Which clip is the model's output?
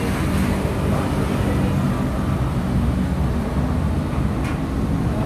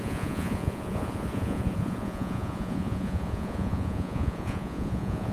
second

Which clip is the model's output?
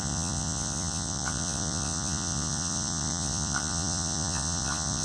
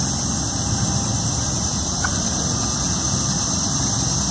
first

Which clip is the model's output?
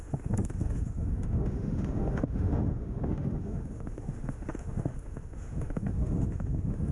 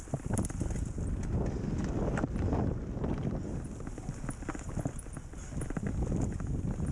first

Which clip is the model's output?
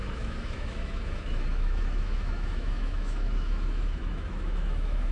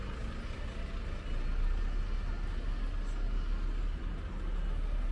first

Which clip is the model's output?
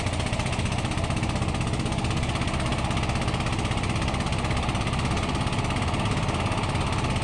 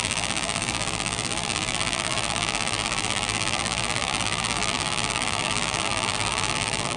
second